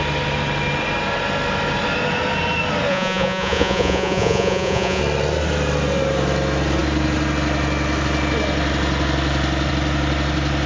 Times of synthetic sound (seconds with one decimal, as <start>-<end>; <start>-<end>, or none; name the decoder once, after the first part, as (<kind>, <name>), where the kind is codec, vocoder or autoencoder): 2.9-5.0 (vocoder, Vocos)